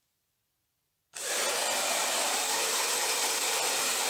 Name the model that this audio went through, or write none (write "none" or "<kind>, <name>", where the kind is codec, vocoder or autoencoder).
none